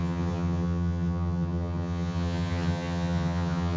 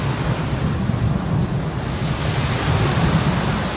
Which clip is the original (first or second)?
second